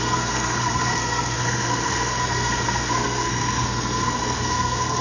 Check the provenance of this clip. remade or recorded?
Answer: remade